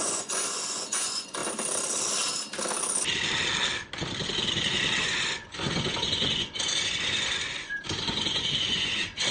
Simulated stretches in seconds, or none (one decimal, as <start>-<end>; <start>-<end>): 0.0-1.4; 5.0-9.3